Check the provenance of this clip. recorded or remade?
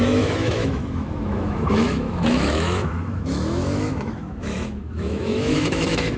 remade